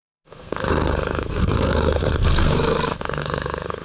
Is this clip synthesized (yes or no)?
yes